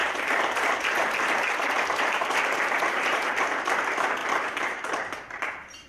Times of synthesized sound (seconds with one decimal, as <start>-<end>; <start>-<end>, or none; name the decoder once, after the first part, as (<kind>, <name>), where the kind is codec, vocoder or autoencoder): 0.0-3.5 (vocoder, BigVGAN v2); 4.2-5.9